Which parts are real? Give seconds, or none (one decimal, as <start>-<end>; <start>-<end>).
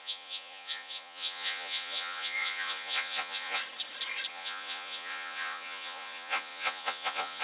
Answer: 3.6-4.3